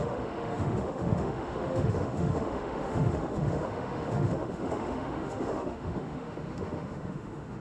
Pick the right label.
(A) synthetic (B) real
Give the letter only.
A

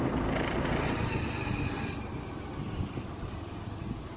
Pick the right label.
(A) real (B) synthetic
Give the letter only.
A